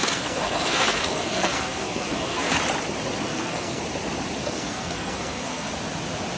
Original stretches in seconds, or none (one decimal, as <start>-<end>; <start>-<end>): 2.6-3.3; 3.8-4.4; 5.7-6.4